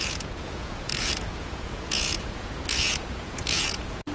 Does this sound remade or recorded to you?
remade